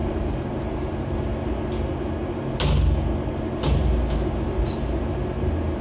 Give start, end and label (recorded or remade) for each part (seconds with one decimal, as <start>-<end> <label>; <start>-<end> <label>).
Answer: 0.0-1.3 remade; 1.3-3.7 recorded; 3.7-5.8 remade